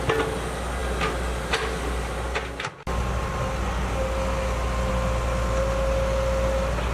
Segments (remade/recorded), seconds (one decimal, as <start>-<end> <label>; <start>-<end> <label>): 0.0-6.9 recorded